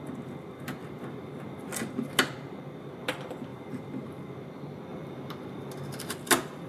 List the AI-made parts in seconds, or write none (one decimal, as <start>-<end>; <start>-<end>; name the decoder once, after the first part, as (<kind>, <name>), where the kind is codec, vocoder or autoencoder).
3.5-4.1 (vocoder, BigVGAN v2)

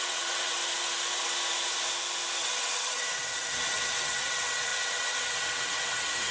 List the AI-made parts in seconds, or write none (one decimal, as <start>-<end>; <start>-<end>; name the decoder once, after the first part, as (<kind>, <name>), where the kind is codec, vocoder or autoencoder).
0.0-0.6 (vocoder, WaveNeXt); 2.4-6.3

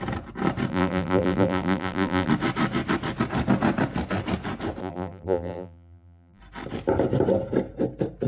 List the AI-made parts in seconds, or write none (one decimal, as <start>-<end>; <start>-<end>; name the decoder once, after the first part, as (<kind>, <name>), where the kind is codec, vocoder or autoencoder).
0.7-2.3 (vocoder, BigVGAN v2); 4.8-6.4

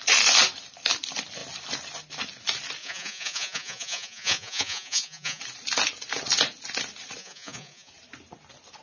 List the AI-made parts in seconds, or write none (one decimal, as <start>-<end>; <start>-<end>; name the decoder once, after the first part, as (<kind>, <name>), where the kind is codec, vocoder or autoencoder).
2.8-5.4 (vocoder, Vocos); 7.2-7.9

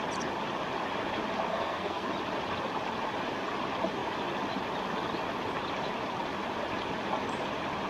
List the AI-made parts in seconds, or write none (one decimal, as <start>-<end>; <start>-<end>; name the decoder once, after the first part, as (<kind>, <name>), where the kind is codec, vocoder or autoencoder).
1.5-2.1 (codec, SNAC)

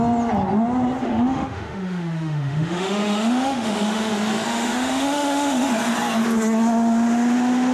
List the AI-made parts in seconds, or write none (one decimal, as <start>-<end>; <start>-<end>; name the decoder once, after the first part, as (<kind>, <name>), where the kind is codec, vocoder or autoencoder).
1.0-4.1 (autoencoder, DAC-VAE); 4.5-5.7

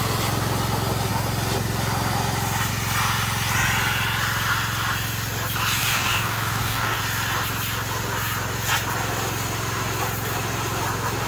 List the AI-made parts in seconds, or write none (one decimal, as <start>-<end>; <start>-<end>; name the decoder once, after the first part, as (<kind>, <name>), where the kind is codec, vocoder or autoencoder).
5.8-7.0 (codec, DAC)